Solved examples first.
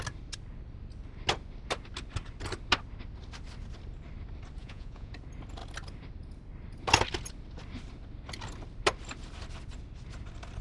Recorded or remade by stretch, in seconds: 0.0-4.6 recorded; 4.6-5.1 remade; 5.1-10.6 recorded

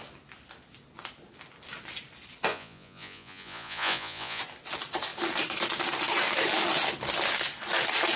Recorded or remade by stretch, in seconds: 0.0-2.5 recorded; 2.5-4.4 remade; 4.4-8.2 recorded

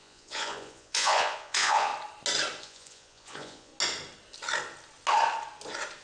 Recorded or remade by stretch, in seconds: 0.0-1.9 remade; 1.9-2.6 recorded; 2.6-3.7 remade; 3.7-6.0 recorded

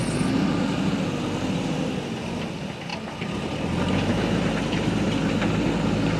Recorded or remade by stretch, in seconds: 0.0-6.2 recorded

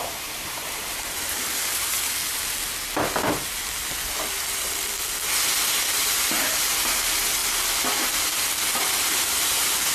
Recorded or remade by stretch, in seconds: 0.0-2.2 remade; 2.2-6.2 recorded; 6.2-7.4 remade; 7.4-8.8 recorded; 8.8-9.9 remade